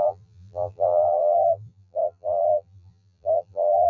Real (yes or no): no